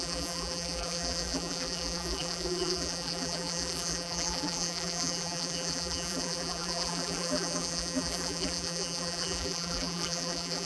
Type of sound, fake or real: fake